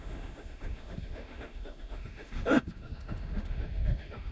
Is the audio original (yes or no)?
no